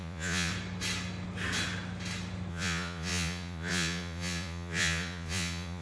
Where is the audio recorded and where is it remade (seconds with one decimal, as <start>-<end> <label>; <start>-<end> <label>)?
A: 0.0-0.5 remade; 0.5-2.5 recorded; 2.5-5.8 remade